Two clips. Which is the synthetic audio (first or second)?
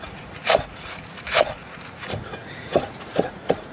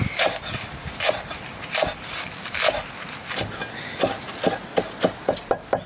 first